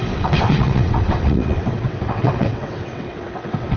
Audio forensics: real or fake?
fake